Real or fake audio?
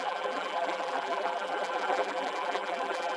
fake